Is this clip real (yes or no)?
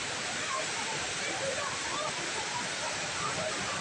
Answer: yes